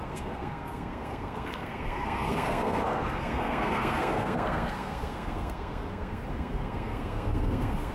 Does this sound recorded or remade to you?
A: remade